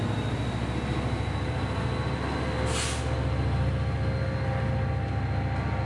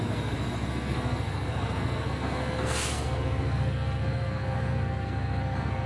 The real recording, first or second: first